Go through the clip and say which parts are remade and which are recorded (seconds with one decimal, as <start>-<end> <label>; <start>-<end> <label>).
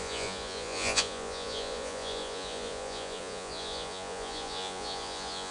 0.0-5.5 remade